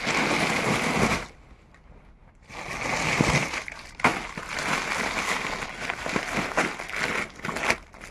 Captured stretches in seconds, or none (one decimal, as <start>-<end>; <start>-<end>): 0.0-8.1